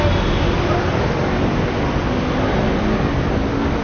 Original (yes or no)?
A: yes